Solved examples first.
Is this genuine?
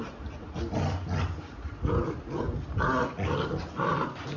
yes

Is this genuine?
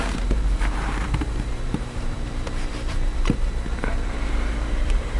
no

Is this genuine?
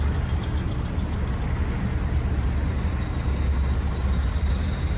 yes